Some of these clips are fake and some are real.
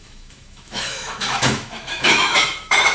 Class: fake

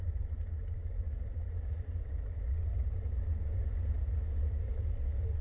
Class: real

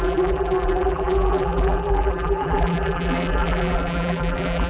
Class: fake